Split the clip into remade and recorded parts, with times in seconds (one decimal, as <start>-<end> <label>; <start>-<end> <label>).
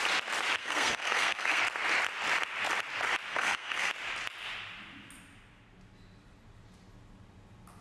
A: 0.0-0.6 recorded; 0.6-1.6 remade; 1.6-3.3 recorded; 3.3-3.9 remade; 3.9-7.8 recorded